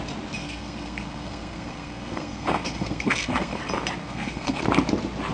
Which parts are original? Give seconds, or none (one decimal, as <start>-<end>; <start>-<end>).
0.0-0.4; 3.6-4.0; 4.6-5.3